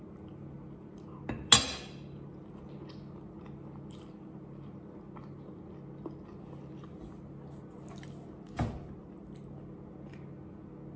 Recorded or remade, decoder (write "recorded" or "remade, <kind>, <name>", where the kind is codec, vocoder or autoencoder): recorded